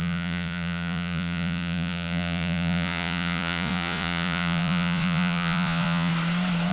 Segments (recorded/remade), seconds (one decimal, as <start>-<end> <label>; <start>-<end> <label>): 0.0-6.1 remade; 6.1-6.7 recorded